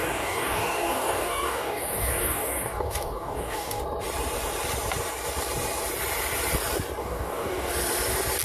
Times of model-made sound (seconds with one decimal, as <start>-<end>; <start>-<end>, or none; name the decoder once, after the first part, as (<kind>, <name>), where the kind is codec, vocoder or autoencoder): 0.0-3.8 (codec, DAC); 7.0-7.7